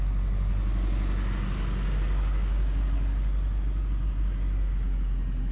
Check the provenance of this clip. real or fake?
real